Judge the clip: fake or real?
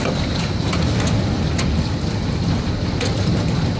real